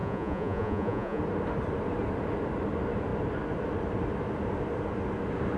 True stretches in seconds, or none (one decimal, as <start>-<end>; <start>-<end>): 1.2-5.6